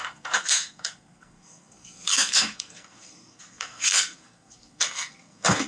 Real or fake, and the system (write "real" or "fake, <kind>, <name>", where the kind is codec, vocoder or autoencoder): fake, codec, SNAC